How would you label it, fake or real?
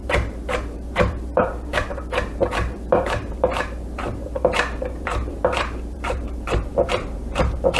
fake